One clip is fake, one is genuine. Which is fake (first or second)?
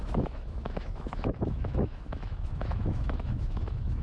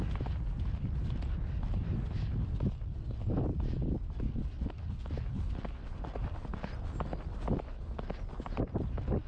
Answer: first